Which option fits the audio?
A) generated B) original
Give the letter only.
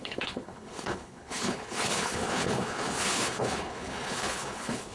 A